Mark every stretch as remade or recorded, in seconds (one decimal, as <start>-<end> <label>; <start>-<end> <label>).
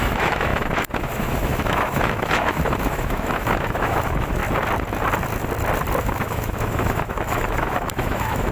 0.0-4.4 remade; 4.4-6.0 recorded; 6.0-8.5 remade